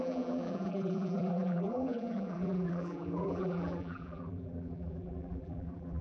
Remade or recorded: remade